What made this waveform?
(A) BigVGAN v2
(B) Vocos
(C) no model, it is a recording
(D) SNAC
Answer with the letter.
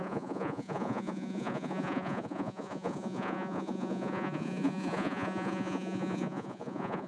B